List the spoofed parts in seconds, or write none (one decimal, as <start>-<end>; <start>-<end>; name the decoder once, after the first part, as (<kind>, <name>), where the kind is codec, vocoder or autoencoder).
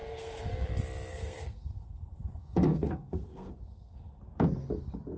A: 0.0-0.7 (codec, SNAC); 1.1-4.2